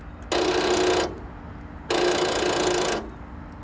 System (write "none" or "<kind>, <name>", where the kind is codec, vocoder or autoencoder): none